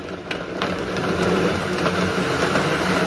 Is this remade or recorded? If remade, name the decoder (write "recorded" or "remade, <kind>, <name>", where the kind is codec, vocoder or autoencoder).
recorded